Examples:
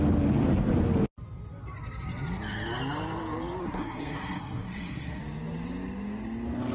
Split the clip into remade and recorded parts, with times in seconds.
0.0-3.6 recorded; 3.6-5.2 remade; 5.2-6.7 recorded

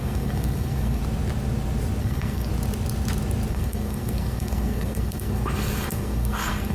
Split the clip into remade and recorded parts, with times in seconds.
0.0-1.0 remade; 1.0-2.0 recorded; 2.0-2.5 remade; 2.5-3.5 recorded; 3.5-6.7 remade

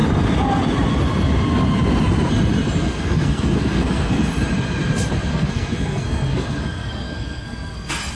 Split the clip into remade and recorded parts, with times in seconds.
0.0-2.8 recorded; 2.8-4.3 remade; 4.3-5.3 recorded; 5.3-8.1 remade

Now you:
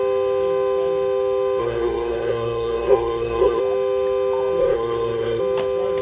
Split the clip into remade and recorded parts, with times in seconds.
0.0-1.6 recorded; 1.6-3.6 remade; 3.6-4.6 recorded; 4.6-5.4 remade; 5.4-6.0 recorded